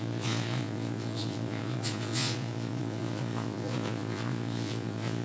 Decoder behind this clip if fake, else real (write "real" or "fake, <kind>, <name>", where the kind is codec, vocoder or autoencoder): fake, vocoder, Vocos